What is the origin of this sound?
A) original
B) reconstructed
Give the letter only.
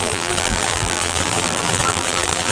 B